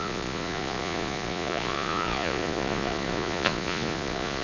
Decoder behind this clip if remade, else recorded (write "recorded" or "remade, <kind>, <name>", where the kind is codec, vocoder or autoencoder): remade, vocoder, Vocos